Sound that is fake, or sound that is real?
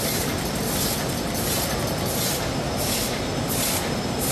real